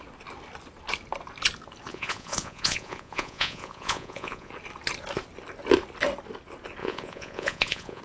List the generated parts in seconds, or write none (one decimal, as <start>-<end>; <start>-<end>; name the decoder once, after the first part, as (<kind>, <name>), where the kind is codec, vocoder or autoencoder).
1.9-4.5 (vocoder, Vocos); 6.8-8.0